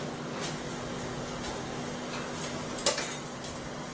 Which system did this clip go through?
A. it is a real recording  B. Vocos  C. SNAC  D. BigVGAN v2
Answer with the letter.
A